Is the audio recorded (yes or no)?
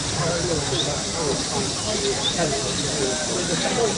yes